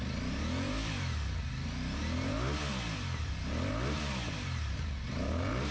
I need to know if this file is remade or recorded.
recorded